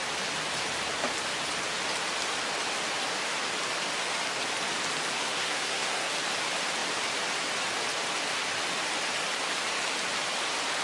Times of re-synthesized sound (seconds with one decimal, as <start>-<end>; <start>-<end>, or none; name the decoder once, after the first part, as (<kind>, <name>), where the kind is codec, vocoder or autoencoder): 5.2-6.1 (codec, SNAC)